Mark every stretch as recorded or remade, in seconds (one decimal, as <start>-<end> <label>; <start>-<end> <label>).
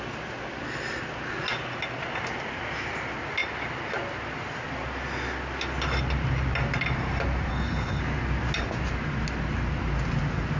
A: 0.0-7.5 recorded; 7.5-8.0 remade; 8.0-10.6 recorded